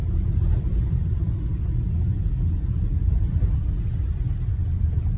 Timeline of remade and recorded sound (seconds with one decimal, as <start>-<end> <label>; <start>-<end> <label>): 0.0-1.2 remade; 1.2-4.3 recorded; 4.3-5.2 remade